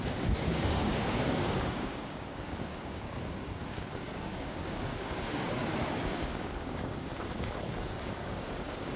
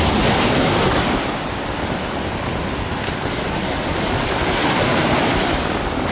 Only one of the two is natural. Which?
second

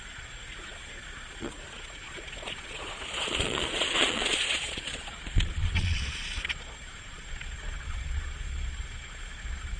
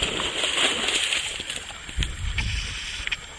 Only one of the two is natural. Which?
second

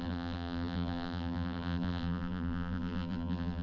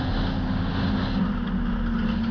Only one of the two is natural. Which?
second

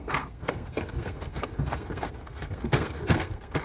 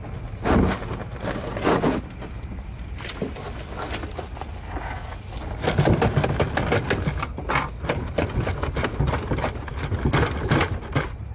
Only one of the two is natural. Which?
second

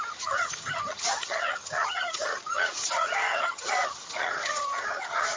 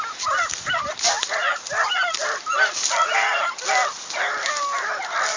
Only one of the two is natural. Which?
second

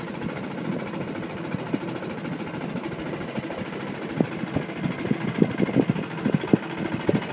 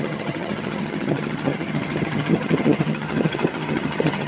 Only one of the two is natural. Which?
first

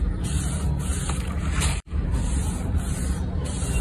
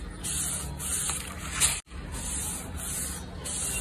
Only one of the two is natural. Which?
second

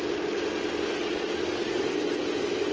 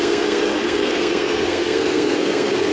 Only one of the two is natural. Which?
first